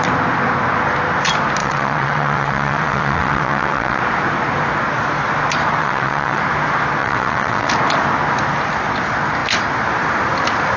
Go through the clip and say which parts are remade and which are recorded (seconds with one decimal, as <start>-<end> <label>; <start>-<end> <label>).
0.0-1.6 recorded; 1.6-4.0 remade; 4.0-5.8 recorded; 5.8-6.4 remade; 6.4-7.0 recorded; 7.0-7.7 remade; 7.7-10.8 recorded